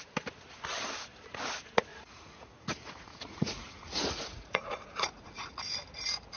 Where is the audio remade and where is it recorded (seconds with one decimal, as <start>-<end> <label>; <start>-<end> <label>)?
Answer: 0.0-1.9 recorded; 1.9-5.6 remade; 5.6-6.4 recorded